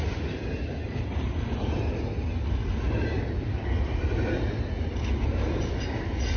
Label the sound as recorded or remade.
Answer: recorded